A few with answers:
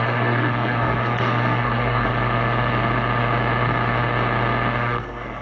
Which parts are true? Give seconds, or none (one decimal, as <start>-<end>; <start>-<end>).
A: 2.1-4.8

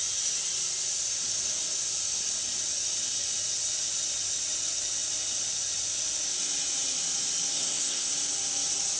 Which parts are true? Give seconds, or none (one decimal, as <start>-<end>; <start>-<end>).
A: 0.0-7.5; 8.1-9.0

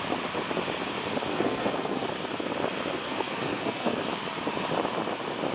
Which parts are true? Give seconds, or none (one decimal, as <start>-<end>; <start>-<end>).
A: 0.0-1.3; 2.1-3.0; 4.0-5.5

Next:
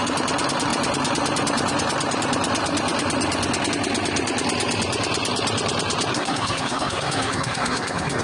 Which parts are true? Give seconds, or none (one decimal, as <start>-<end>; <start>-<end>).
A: 0.0-6.1

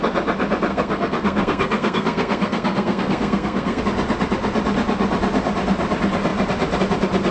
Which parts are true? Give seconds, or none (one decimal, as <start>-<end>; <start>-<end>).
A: 0.0-0.7; 3.8-7.3

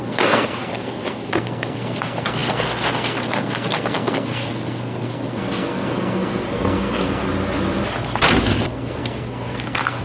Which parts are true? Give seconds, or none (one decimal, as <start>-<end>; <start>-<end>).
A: 7.2-8.4